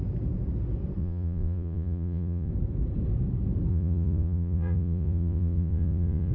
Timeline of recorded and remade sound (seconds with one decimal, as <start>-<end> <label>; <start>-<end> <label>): 0.0-1.0 recorded; 1.0-2.5 remade; 2.5-3.7 recorded; 3.7-6.3 remade